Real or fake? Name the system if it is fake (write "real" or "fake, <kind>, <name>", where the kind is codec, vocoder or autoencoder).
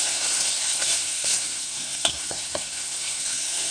fake, codec, SNAC